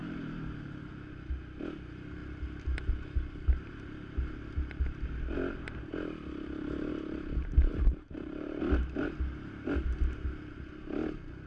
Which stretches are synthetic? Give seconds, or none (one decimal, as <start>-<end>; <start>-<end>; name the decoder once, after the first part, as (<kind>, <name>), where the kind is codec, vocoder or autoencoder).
0.0-0.8 (vocoder, BigVGAN v2); 7.7-8.6